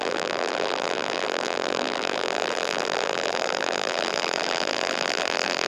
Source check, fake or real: fake